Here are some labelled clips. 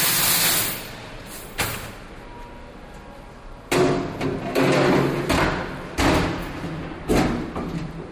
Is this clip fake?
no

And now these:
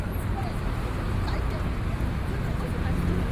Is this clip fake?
no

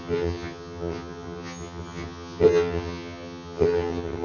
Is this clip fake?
yes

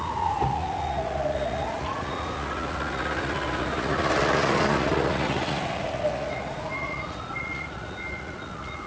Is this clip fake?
yes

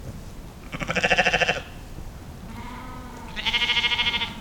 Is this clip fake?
no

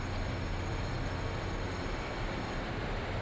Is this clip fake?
no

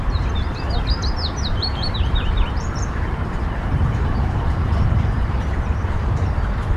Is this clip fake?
yes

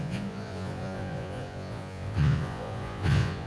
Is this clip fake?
yes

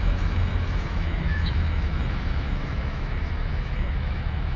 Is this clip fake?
yes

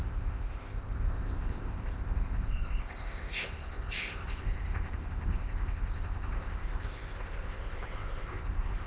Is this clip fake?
yes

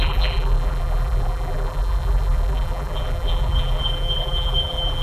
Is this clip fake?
yes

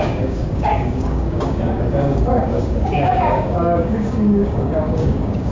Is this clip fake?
yes